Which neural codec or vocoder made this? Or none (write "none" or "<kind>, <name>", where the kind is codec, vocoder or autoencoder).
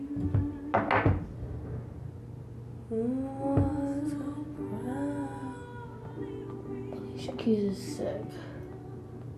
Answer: none